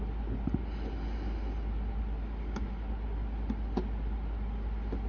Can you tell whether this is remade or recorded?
recorded